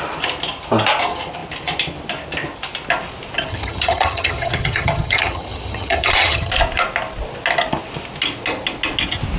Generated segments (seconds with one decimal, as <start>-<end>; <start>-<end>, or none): 3.5-6.5